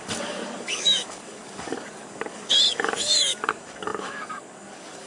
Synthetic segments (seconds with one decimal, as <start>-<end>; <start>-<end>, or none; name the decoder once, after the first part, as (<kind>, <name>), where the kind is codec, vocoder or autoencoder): 0.0-5.1 (codec, DAC)